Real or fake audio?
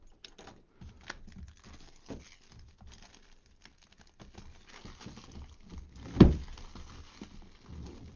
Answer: real